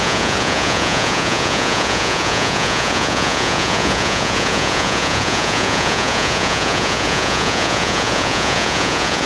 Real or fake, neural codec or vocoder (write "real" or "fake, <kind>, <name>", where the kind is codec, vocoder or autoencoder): fake, vocoder, Vocos